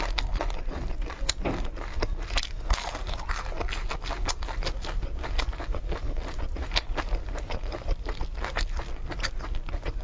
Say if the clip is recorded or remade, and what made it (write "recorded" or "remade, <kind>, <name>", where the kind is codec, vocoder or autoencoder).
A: recorded